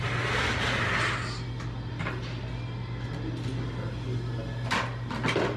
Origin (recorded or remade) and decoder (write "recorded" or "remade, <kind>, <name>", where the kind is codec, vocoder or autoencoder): recorded